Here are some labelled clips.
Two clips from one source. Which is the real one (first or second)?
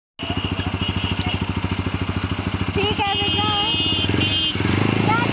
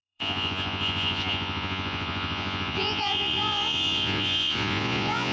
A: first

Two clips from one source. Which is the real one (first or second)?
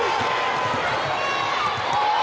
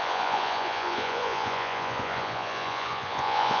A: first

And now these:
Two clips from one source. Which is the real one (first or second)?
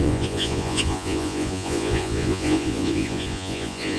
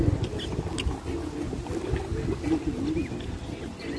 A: second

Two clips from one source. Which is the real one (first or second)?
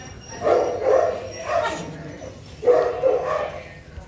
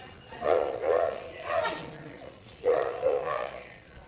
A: first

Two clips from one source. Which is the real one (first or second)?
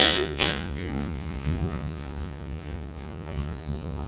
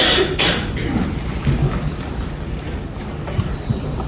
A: second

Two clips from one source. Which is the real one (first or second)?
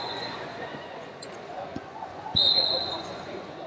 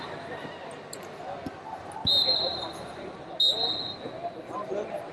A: second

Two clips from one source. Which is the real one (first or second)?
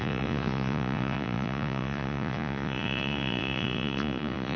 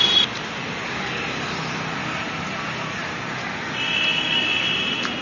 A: second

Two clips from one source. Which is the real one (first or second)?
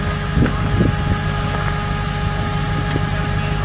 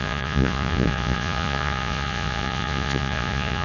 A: first